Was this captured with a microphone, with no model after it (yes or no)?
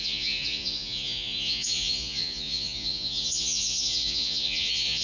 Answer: no